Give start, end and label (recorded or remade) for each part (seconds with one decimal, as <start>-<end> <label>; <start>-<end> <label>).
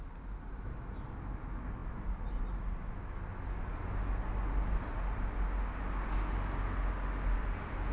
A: 0.0-7.9 recorded